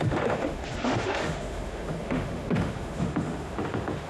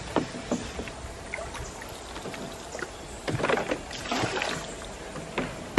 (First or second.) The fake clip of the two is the first